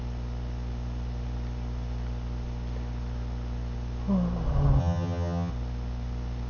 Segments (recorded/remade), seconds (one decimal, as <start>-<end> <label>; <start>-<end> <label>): 0.0-4.8 recorded; 4.8-5.5 remade; 5.5-6.5 recorded

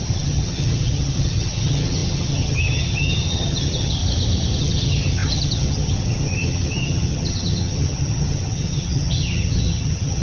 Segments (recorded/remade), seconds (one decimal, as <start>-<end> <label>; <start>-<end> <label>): 0.0-4.0 remade; 4.0-4.6 recorded; 4.6-10.2 remade